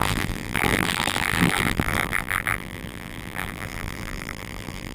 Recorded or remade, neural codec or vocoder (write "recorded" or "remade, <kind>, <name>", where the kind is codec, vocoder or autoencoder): remade, vocoder, BigVGAN v2